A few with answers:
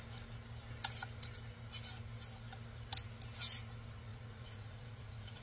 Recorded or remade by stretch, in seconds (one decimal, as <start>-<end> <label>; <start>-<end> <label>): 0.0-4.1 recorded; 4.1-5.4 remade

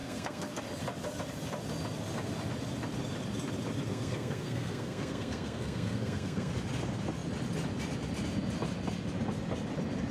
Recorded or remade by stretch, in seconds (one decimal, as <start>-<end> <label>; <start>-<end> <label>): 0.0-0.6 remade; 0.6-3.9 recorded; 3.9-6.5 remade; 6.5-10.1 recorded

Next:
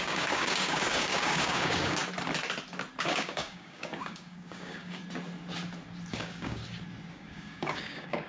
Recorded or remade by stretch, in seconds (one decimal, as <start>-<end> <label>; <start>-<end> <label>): 0.0-2.0 remade; 2.0-3.0 recorded; 3.0-5.0 remade; 5.0-6.1 recorded; 6.1-6.6 remade; 6.6-7.1 recorded; 7.1-8.3 remade

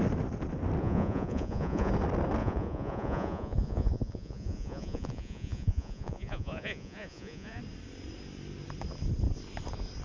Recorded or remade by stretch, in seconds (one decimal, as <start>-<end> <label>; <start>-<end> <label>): 0.0-0.8 recorded; 0.8-1.9 remade; 1.9-2.4 recorded; 2.4-7.6 remade; 7.6-10.0 recorded